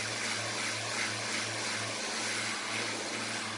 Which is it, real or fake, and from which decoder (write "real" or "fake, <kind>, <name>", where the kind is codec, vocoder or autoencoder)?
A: real